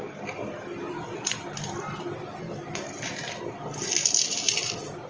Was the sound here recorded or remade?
recorded